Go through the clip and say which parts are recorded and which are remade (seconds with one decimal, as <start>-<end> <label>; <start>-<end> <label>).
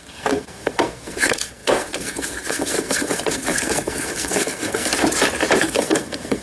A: 0.0-4.9 remade; 4.9-5.6 recorded; 5.6-6.4 remade